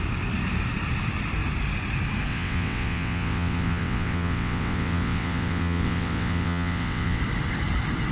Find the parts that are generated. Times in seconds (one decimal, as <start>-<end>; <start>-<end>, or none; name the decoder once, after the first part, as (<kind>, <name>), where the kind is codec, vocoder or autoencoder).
2.3-7.2 (vocoder, WaveNeXt)